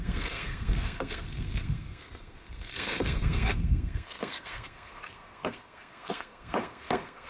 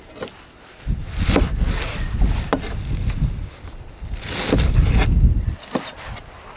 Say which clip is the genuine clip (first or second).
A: second